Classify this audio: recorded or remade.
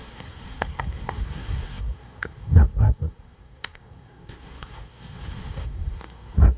remade